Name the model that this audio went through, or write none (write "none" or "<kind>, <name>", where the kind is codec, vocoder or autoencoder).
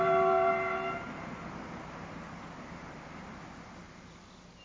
none